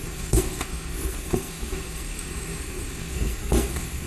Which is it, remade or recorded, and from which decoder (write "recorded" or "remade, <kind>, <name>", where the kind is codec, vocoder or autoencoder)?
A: remade, codec, SNAC